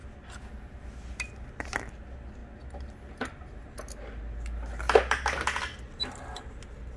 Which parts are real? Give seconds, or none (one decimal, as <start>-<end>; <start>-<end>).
0.0-7.0

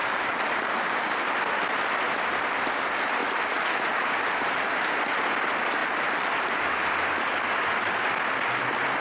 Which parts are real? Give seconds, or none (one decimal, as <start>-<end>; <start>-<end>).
1.4-5.8; 6.9-9.0

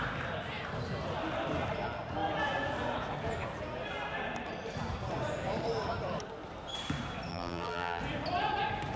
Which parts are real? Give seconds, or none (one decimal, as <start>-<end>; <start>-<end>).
0.0-7.3; 8.0-9.0

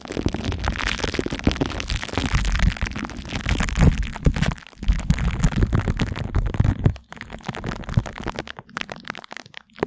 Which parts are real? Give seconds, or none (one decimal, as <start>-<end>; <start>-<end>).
0.0-9.9

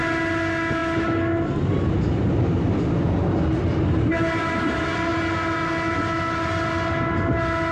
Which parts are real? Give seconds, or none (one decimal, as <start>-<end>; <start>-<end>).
0.0-3.7; 4.5-7.7

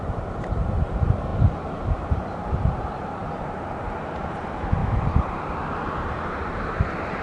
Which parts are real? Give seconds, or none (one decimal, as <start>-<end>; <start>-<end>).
none